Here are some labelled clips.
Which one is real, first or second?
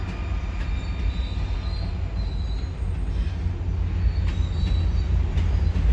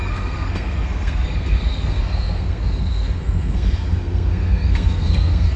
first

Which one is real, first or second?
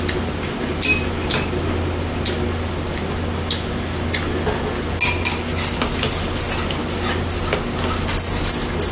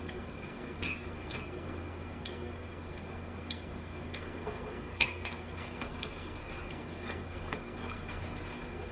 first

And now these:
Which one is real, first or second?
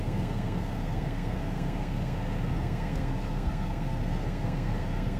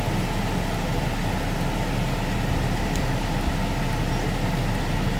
second